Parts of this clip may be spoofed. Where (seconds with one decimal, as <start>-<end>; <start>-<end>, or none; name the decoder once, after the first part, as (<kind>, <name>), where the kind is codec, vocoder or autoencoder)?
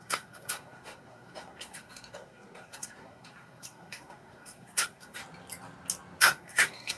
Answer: 0.0-5.2 (codec, SNAC); 6.2-7.0